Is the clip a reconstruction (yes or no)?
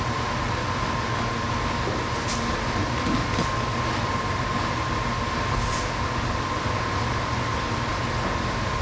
no